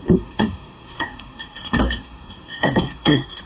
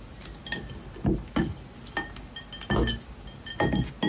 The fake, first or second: first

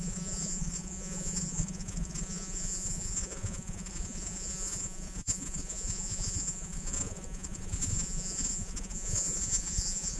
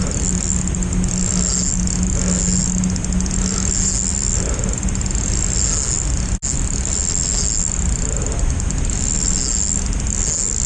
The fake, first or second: first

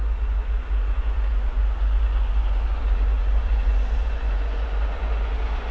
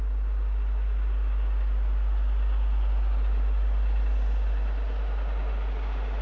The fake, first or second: first